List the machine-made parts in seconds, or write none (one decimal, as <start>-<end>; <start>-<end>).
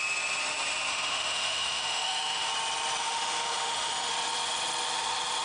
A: 0.9-2.5; 3.0-4.1